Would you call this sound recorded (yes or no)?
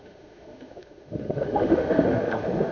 no